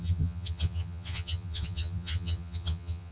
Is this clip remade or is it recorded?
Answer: remade